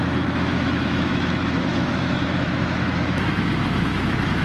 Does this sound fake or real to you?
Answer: fake